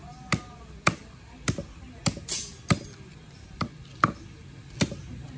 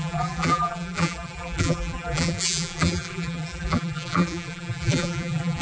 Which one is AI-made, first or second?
second